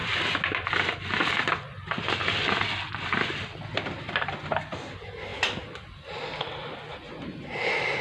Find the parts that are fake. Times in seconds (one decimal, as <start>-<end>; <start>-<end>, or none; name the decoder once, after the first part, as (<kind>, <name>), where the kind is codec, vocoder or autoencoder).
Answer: none